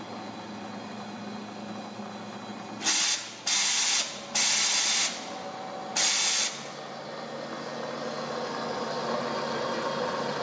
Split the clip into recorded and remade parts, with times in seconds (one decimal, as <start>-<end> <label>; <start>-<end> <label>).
0.0-10.4 recorded